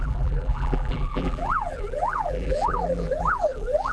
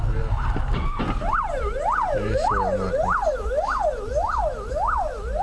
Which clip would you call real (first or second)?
second